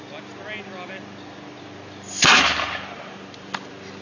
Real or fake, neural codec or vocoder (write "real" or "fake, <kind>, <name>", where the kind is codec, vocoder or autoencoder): real